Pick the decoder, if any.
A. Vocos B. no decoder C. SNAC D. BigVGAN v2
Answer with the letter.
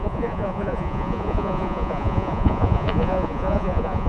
A